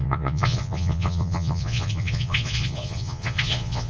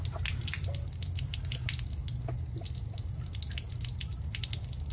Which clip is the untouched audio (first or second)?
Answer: second